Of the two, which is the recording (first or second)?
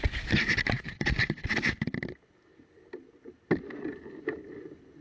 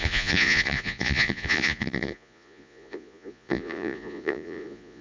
first